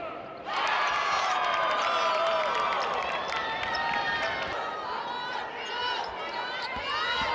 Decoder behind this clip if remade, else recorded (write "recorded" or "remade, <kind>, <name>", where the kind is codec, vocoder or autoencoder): recorded